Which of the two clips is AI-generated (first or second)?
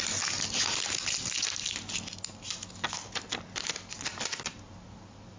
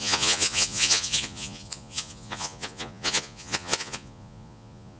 second